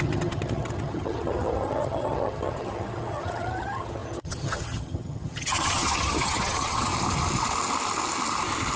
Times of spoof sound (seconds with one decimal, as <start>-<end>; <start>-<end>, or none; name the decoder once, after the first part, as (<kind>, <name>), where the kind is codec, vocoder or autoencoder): 0.0-6.9 (vocoder, HiFi-GAN)